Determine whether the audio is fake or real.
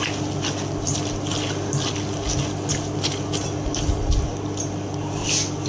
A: real